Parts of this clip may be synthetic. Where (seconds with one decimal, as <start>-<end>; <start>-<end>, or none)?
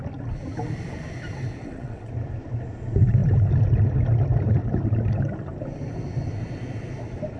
1.6-2.1